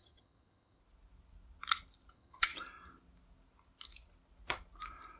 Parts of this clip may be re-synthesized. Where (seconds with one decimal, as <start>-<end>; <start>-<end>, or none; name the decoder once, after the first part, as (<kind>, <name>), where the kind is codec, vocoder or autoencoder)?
0.0-0.8 (vocoder, HiFi-GAN); 2.1-2.5